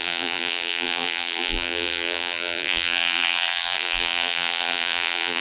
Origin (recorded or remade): remade